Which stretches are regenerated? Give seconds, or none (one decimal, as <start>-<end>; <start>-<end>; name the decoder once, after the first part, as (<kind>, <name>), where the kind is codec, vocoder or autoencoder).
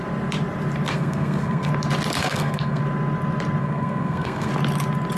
0.9-1.7 (codec, SNAC); 2.2-2.8; 3.6-4.5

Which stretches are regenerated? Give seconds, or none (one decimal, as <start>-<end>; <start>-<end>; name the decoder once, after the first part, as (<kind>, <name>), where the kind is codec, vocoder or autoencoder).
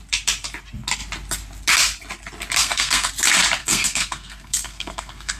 2.6-3.1 (codec, SNAC); 3.6-5.4